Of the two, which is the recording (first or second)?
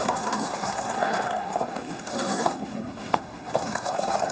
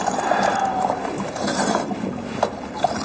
second